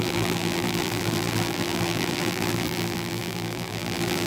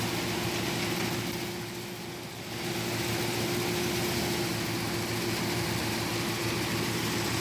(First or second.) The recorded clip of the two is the second